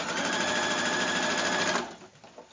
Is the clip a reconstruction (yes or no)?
no